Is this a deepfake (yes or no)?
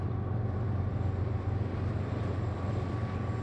no